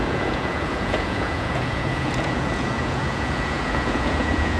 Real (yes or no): no